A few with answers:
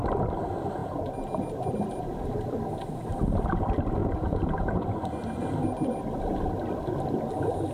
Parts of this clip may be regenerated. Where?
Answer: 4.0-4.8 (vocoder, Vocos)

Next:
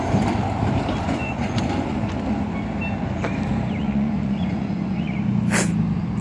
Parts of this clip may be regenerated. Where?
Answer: 1.0-2.1 (vocoder, Vocos); 3.8-5.4

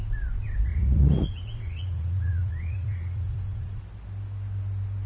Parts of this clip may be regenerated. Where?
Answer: 0.7-3.8 (vocoder, Vocos)

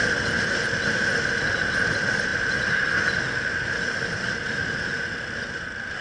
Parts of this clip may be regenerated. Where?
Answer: none

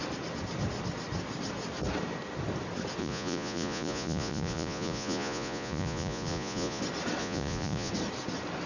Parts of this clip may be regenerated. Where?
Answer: 3.0-6.8 (vocoder, Vocos); 7.2-7.9

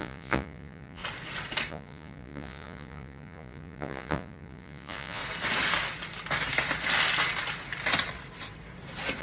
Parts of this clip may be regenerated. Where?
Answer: 0.0-1.0 (vocoder, Vocos); 1.7-5.2

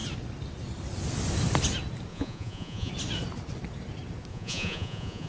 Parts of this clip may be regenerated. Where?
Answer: 2.1-2.9 (vocoder, Vocos); 4.3-5.3

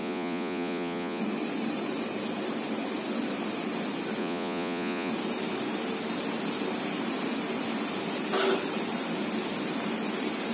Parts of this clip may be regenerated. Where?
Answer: 0.0-1.2 (vocoder, Vocos); 4.2-5.1